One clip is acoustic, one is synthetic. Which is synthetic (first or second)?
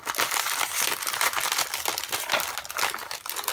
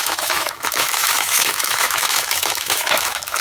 second